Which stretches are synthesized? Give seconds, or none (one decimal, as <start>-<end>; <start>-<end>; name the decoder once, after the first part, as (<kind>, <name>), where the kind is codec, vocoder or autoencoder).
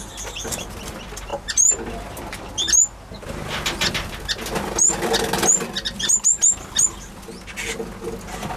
none